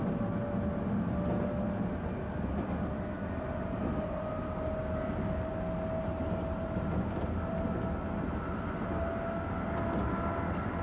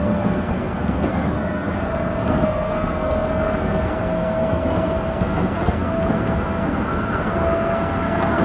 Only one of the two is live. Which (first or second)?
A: first